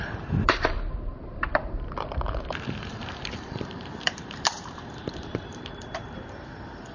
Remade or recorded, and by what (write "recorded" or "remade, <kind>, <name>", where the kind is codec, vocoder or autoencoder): remade, vocoder, BigVGAN v2